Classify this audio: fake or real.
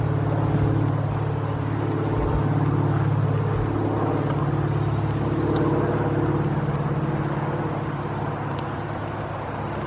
real